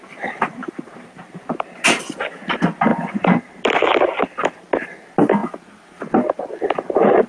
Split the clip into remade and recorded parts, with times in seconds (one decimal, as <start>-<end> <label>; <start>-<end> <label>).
0.0-0.6 recorded; 0.6-2.0 remade; 2.0-2.9 recorded; 2.9-3.6 remade; 3.6-7.3 recorded